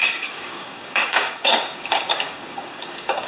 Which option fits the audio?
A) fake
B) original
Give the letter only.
A